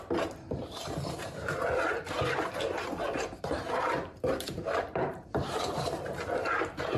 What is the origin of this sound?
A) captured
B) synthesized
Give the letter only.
B